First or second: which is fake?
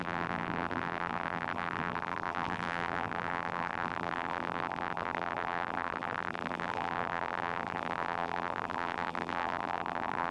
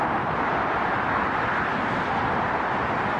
first